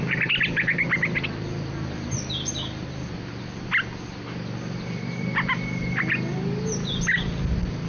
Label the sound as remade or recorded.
recorded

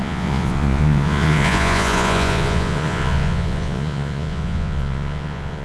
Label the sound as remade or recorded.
remade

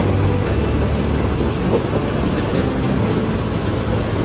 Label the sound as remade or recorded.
recorded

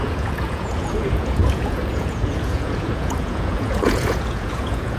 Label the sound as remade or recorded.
remade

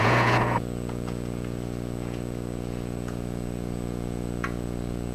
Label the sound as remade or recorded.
remade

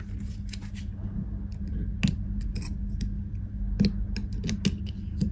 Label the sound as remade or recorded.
recorded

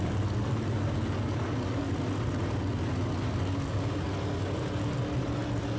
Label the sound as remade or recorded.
recorded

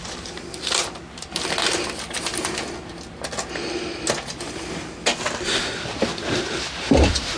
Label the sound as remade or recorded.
recorded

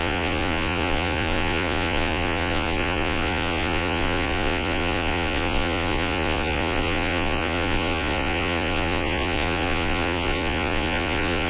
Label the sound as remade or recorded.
remade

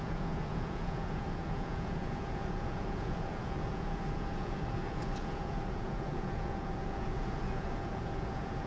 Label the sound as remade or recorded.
remade